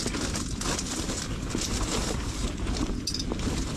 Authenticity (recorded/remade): recorded